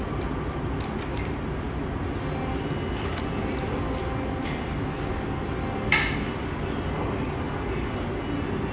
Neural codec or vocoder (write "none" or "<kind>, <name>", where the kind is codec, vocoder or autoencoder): none